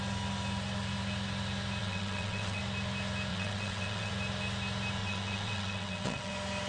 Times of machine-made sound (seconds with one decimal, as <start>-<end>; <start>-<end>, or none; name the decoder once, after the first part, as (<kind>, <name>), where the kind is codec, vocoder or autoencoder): 1.8-2.6 (vocoder, WaveNeXt); 3.3-4.1; 5.0-6.3

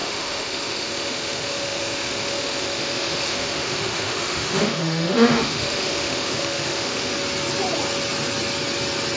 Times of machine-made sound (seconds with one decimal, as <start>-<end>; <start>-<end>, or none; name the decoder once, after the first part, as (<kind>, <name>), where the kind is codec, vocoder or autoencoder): 0.0-7.1 (autoencoder, DAC-VAE)

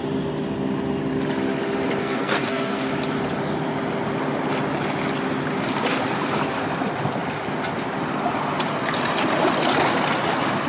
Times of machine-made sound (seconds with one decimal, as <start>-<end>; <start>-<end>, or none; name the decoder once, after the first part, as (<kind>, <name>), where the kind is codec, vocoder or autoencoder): 2.0-2.9 (codec, SNAC)

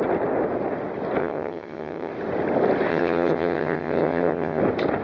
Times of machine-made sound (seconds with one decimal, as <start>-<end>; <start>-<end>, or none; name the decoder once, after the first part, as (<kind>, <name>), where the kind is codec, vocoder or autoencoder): 1.2-2.1 (vocoder, HiFi-GAN); 2.9-4.6

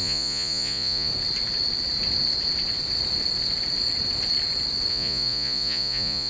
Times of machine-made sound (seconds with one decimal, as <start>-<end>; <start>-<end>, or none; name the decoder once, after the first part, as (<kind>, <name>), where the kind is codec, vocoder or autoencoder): 0.0-1.1 (vocoder, Vocos); 4.9-6.3

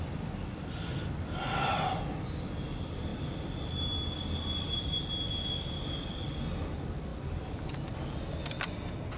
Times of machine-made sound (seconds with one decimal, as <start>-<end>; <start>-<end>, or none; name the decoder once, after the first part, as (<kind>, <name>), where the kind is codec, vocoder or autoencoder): none

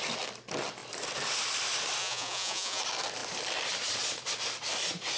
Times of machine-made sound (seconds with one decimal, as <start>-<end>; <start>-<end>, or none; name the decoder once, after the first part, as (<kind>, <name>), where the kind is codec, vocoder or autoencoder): 2.0-2.8 (vocoder, Vocos)

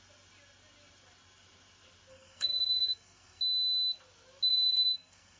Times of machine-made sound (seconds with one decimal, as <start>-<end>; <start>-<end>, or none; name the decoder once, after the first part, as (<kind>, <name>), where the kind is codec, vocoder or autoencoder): 2.1-3.4 (codec, SNAC); 4.5-5.4